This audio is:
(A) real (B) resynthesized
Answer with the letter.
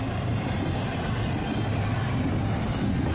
A